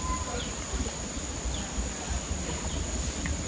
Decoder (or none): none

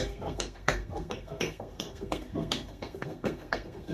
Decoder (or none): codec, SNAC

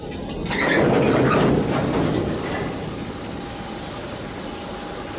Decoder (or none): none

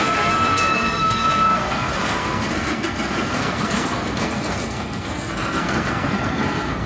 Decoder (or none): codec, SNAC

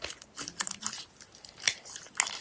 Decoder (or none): none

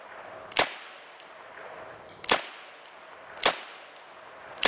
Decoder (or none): none